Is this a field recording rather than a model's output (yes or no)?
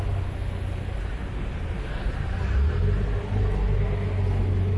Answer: yes